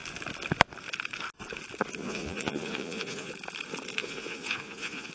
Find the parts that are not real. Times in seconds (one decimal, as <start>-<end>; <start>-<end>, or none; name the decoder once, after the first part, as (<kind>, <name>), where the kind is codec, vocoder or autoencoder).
2.0-3.3 (vocoder, Vocos); 4.0-5.1